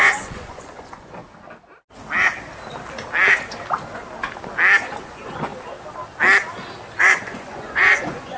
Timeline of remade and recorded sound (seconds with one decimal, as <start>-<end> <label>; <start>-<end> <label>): 0.0-1.2 remade; 1.2-5.0 recorded; 5.0-5.5 remade; 5.5-7.0 recorded; 7.0-8.4 remade